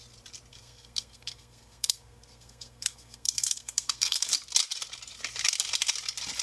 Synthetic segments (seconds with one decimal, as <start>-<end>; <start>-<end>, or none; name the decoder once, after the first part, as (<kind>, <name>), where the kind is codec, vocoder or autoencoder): 0.5-4.3 (codec, SNAC)